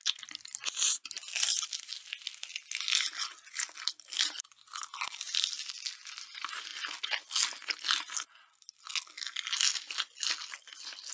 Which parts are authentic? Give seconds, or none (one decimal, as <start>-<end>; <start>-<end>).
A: 0.0-11.1